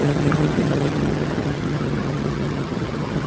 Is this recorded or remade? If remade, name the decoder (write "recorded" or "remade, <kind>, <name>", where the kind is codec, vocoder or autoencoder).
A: remade, vocoder, HiFi-GAN